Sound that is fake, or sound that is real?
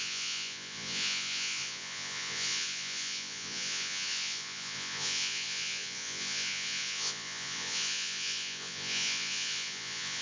fake